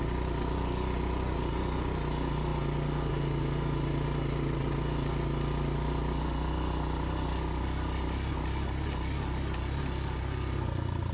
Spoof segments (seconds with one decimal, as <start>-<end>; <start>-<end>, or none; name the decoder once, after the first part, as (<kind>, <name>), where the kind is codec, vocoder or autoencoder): none